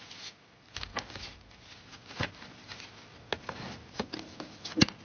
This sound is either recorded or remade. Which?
recorded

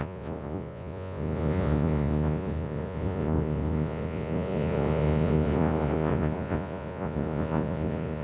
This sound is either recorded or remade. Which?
remade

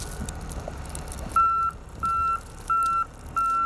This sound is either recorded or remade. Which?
recorded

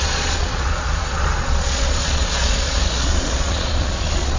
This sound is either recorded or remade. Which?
remade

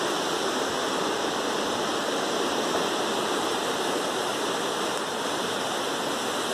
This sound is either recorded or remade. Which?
recorded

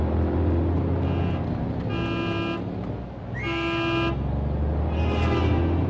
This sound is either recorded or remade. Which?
recorded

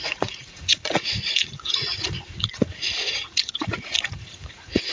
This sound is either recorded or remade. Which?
remade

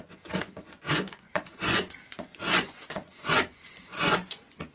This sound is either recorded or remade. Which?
remade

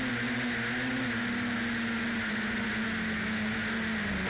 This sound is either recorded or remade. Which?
recorded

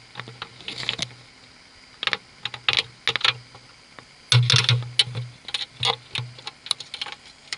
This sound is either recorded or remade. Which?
recorded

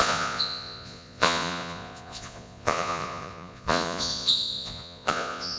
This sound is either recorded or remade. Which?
remade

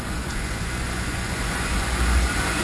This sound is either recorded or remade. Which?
remade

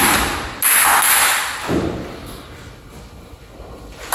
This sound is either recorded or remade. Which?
recorded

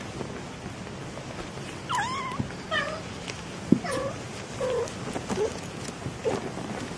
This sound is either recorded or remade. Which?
recorded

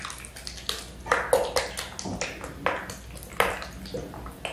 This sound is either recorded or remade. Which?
recorded